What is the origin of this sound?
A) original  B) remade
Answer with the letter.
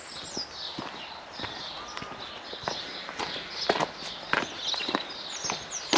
A